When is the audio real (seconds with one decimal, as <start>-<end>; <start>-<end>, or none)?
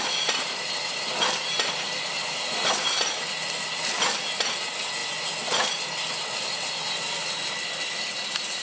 0.0-8.6